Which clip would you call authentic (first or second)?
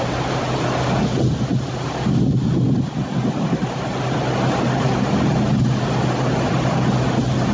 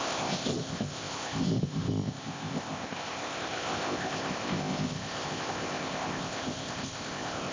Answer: first